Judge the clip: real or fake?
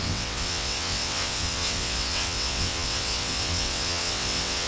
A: fake